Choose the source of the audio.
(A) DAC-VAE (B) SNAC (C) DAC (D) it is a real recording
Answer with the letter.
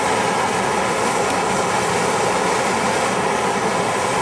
D